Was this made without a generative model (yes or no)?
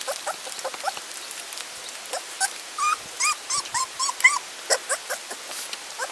yes